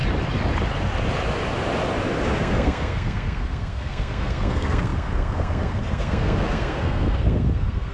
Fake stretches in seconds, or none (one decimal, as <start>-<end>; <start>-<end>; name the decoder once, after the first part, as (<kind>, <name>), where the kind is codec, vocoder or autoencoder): 2.4-7.9 (codec, SNAC)